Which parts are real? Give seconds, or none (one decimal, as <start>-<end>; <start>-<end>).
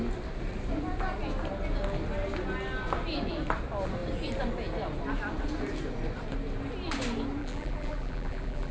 0.0-7.4